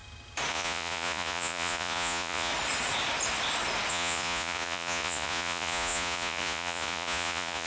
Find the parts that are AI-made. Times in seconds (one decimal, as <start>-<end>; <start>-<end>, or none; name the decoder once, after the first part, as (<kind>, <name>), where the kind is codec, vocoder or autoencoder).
0.5-2.5 (vocoder, Vocos); 3.9-7.7